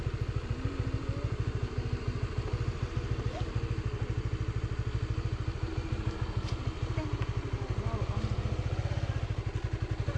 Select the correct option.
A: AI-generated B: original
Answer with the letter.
B